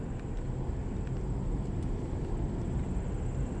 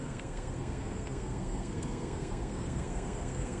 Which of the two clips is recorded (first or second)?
first